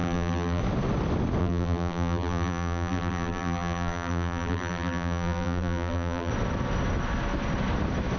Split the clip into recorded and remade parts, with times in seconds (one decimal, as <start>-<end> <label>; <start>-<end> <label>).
0.0-0.6 remade; 0.6-1.4 recorded; 1.4-6.3 remade; 6.3-8.2 recorded